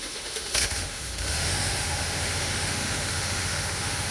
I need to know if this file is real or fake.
fake